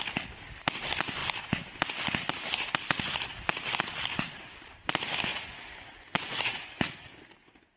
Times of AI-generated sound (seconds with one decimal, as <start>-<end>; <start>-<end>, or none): 5.3-7.0